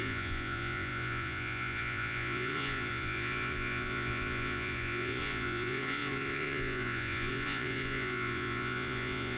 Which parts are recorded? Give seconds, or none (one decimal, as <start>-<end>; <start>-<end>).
none